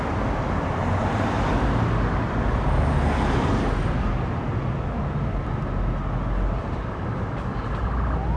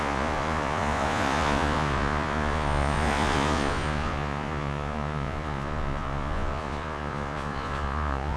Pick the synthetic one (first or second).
second